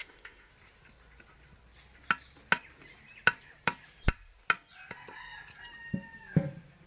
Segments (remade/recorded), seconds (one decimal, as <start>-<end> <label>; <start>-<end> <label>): 0.0-0.5 remade; 0.5-6.9 recorded

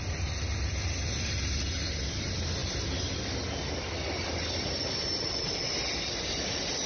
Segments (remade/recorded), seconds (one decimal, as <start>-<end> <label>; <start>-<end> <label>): 0.0-6.9 recorded

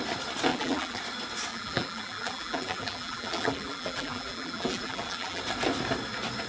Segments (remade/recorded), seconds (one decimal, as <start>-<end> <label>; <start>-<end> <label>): 0.0-0.5 recorded; 0.5-1.0 remade; 1.0-1.5 recorded; 1.5-5.4 remade; 5.4-6.5 recorded

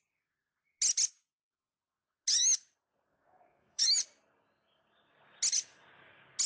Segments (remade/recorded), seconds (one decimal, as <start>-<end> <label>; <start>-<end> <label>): 0.0-3.1 recorded; 3.1-3.8 remade; 3.8-6.5 recorded

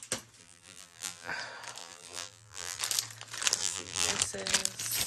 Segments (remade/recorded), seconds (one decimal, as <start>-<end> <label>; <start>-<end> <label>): 0.0-0.4 recorded; 0.4-1.3 remade; 1.3-1.8 recorded; 1.8-2.8 remade; 2.8-3.6 recorded; 3.6-4.1 remade; 4.1-5.1 recorded